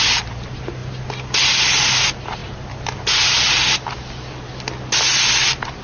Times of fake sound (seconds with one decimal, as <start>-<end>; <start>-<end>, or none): none